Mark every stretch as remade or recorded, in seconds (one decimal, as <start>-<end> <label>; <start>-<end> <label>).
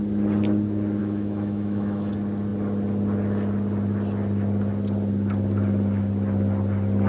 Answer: 0.0-1.0 recorded; 1.0-2.1 remade; 2.1-7.1 recorded